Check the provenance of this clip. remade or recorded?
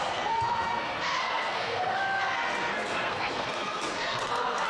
remade